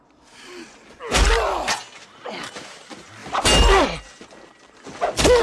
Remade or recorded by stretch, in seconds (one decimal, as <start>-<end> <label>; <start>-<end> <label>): 0.0-3.2 recorded; 3.2-4.2 remade; 4.2-5.4 recorded